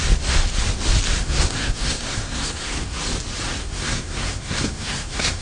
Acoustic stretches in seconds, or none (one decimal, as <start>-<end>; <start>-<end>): 0.0-1.2; 3.0-3.6